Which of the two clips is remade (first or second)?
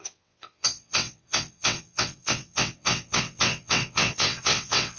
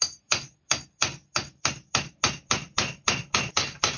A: first